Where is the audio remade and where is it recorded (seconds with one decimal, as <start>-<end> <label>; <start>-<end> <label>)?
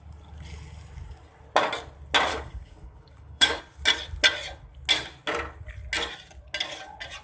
0.0-2.3 recorded; 2.3-3.6 remade; 3.6-7.2 recorded